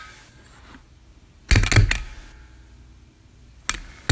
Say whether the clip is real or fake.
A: real